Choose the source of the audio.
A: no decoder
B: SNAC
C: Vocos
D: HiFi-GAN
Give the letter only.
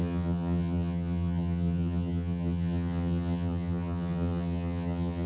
D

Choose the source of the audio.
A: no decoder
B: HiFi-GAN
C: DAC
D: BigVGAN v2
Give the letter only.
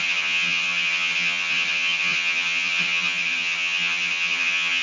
B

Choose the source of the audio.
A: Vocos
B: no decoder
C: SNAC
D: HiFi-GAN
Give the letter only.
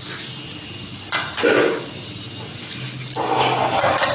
B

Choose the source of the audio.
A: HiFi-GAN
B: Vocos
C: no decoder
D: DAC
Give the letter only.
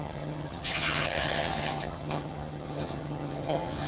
A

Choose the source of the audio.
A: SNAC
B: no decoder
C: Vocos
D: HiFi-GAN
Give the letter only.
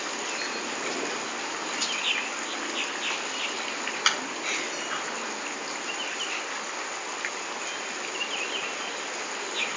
B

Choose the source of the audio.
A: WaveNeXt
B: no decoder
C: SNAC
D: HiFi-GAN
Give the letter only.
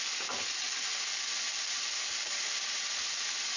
B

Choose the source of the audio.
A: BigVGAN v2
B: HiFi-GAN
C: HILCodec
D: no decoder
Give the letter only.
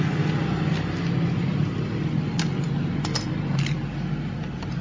D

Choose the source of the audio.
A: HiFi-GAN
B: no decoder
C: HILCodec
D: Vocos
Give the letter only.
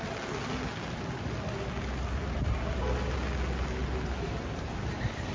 B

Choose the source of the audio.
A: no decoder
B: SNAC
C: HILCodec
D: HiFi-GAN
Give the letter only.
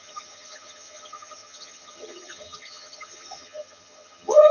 D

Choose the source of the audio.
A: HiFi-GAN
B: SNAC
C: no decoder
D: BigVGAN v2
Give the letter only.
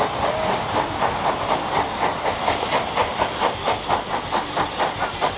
C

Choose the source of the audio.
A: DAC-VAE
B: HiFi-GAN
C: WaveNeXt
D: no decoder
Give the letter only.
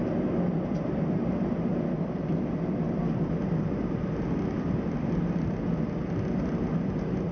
D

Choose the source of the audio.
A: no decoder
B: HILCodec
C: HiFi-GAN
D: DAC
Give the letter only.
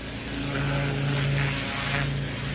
A